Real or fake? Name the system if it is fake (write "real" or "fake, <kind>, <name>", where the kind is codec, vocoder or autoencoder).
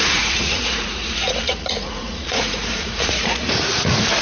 fake, vocoder, Vocos